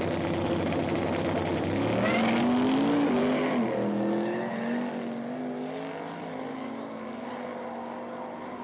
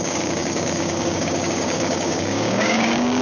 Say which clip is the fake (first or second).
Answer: second